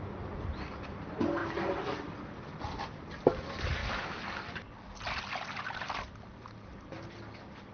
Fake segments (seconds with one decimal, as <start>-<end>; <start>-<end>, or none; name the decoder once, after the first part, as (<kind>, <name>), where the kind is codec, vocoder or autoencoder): none